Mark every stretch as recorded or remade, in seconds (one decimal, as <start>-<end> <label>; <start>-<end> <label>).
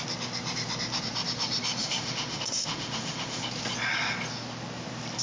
0.0-1.8 recorded; 1.8-3.4 remade; 3.4-5.2 recorded